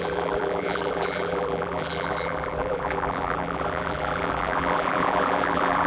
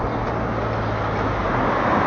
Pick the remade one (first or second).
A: first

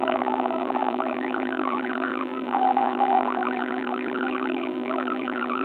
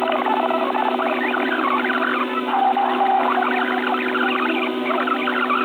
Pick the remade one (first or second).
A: first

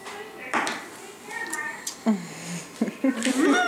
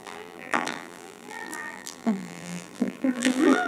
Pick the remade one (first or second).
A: second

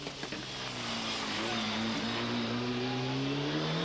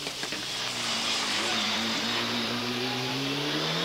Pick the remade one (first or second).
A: second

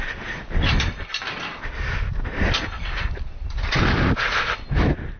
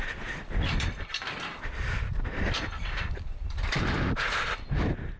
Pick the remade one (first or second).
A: second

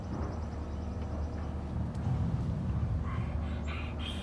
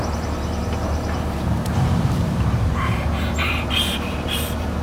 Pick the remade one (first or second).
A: second